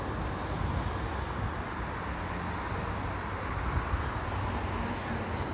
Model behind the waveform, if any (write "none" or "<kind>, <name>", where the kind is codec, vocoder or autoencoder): none